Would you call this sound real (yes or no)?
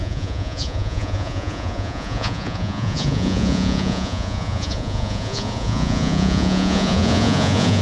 no